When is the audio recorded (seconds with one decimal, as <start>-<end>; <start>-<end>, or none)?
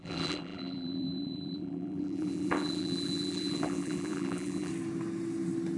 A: 4.7-5.8